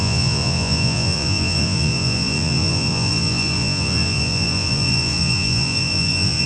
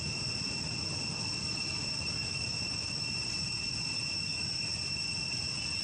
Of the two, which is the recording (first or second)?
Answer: second